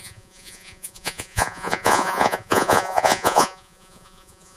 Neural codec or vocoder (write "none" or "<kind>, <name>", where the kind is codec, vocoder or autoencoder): vocoder, Vocos